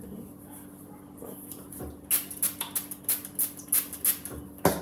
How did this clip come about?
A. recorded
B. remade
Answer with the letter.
A